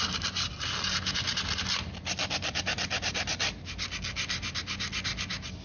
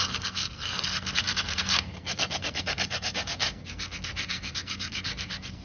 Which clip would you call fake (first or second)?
second